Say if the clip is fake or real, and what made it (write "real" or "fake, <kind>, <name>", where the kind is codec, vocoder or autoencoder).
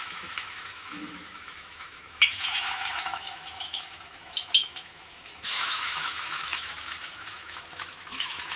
fake, autoencoder, DAC-VAE